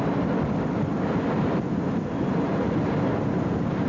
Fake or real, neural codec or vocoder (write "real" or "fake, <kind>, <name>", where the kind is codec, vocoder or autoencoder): real